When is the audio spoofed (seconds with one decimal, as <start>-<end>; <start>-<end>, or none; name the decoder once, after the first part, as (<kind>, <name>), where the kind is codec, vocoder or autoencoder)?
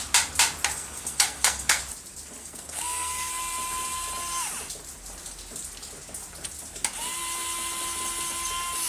0.7-1.8 (codec, SNAC); 2.4-3.3